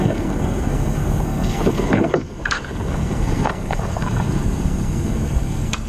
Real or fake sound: fake